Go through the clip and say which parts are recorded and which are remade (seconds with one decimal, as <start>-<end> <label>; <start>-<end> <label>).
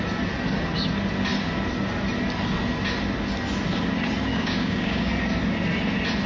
0.0-4.3 recorded; 4.3-5.1 remade; 5.1-6.3 recorded